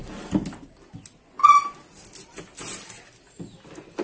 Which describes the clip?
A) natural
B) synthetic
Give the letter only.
A